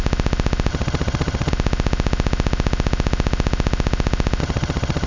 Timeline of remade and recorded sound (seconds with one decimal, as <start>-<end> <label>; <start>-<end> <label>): 0.0-0.7 recorded; 0.7-1.5 remade; 1.5-4.4 recorded; 4.4-5.1 remade